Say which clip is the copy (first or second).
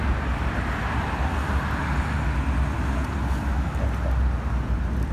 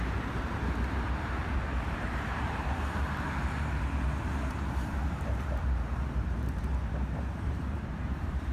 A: second